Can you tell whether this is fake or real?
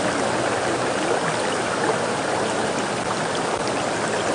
real